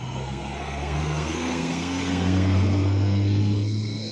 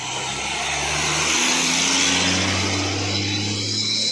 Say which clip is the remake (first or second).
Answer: first